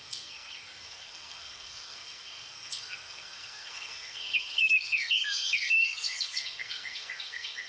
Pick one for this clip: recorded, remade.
remade